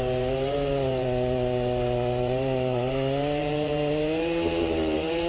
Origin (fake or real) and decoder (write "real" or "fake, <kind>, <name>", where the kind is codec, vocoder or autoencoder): fake, vocoder, BigVGAN v2